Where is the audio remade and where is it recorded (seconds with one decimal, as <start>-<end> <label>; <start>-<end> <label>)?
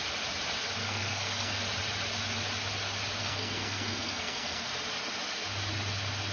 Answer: 0.0-0.8 recorded; 0.8-1.6 remade; 1.6-3.2 recorded; 3.2-4.7 remade; 4.7-6.3 recorded